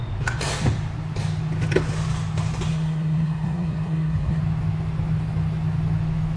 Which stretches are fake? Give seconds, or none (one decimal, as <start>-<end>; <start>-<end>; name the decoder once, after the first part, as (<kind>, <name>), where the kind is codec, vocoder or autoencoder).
2.7-4.4 (codec, SNAC)